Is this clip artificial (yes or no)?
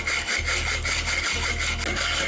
no